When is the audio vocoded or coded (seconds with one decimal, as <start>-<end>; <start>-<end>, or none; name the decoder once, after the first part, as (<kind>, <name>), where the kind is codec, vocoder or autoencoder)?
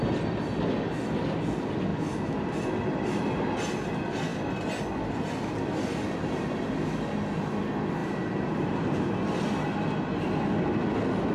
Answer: 8.0-9.1 (vocoder, BigVGAN v2)